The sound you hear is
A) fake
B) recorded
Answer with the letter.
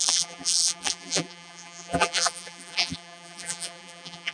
A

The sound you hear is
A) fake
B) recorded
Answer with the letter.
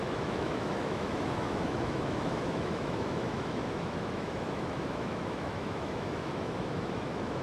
A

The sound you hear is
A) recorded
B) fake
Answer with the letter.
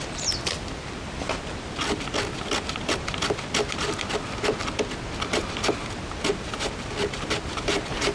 A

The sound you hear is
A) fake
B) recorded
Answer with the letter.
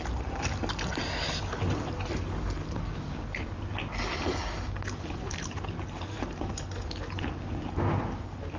B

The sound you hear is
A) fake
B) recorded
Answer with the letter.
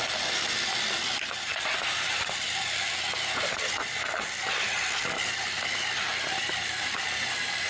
A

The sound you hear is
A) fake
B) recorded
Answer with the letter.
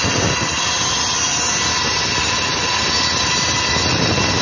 B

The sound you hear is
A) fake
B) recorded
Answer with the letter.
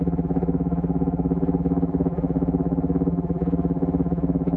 A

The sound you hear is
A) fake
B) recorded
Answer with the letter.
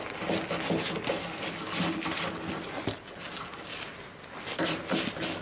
B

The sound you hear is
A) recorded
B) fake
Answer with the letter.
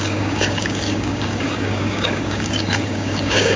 B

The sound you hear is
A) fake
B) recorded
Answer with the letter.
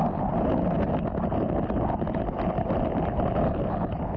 B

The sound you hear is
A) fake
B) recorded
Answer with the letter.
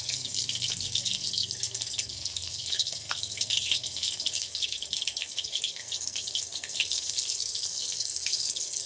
A